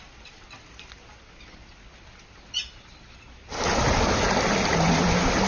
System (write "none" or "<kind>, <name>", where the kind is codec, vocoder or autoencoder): none